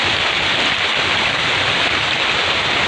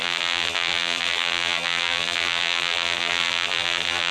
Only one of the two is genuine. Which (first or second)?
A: first